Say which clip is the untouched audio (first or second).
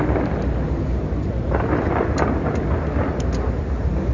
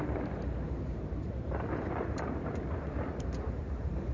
first